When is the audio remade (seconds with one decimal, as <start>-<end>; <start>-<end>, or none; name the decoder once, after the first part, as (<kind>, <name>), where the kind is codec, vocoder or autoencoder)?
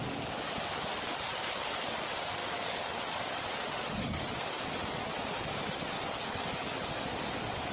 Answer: none